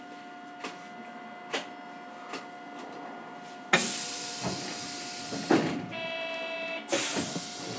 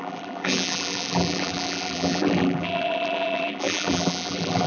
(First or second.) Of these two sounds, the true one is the first